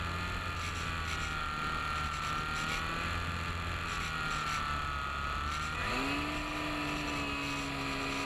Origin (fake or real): real